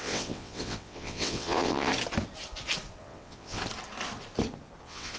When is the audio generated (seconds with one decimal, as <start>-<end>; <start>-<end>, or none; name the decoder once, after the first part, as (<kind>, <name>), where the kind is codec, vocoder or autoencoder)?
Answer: 0.0-1.9 (vocoder, WaveNeXt); 3.0-3.6; 4.8-5.2